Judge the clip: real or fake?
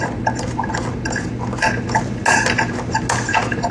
real